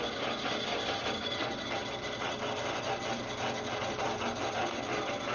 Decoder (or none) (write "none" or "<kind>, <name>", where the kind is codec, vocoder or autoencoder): none